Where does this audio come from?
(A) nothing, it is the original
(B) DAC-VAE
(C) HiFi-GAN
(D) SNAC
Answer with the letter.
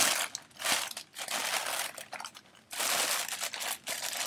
A